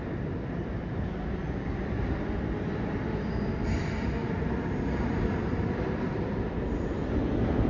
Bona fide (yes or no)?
yes